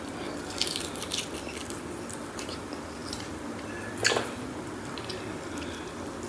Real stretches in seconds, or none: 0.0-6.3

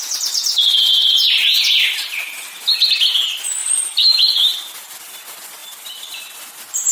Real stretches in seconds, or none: 0.0-3.6; 4.2-5.6; 6.3-6.9

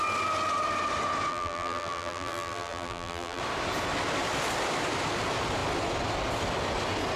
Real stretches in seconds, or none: 0.0-1.3; 3.4-7.2

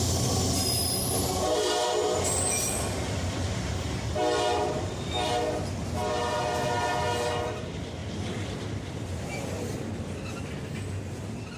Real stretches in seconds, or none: 0.0-11.6

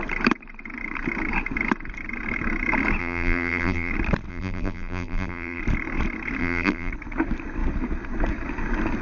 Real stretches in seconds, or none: 0.0-3.0; 3.9-4.3; 5.6-6.4; 6.9-9.0

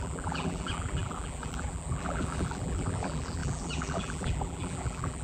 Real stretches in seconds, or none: none

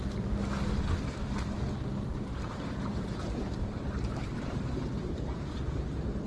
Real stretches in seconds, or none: 0.0-2.1

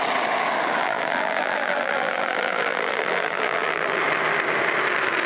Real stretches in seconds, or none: 0.0-0.8; 4.0-5.3